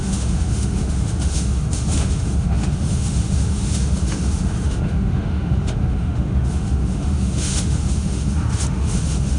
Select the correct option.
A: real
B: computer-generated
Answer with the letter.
B